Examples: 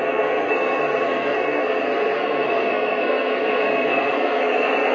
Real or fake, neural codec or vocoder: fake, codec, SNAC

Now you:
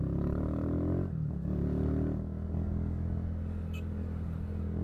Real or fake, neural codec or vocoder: fake, codec, DAC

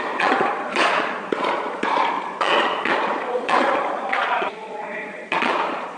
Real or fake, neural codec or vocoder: fake, vocoder, Vocos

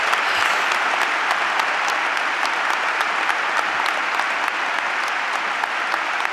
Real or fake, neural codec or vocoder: real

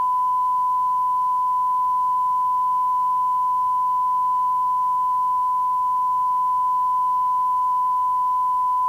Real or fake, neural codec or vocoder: real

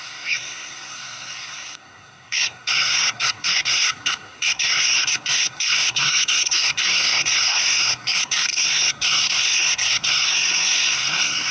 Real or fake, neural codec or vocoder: fake, codec, SNAC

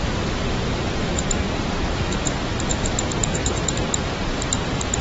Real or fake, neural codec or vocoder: fake, vocoder, BigVGAN v2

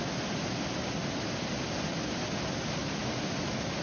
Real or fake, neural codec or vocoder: real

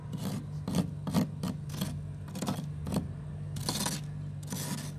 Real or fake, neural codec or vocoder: real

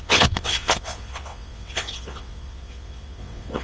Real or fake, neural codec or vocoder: fake, vocoder, WaveNeXt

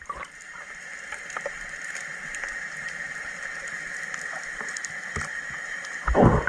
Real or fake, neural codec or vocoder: real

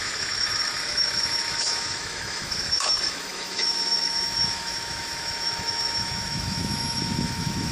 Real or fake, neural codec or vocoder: fake, autoencoder, DAC-VAE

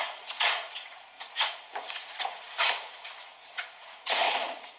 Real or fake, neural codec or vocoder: fake, vocoder, Vocos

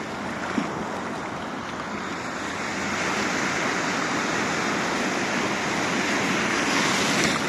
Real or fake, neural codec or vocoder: real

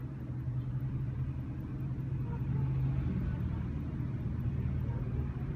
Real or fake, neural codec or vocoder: real